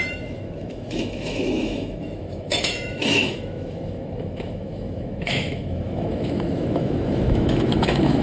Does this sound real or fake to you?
fake